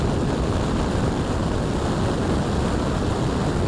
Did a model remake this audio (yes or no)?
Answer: no